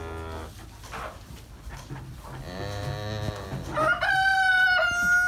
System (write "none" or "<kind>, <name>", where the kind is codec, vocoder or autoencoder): none